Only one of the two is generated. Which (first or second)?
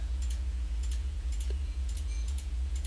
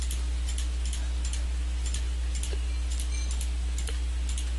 first